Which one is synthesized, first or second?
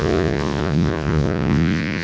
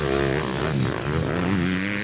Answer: first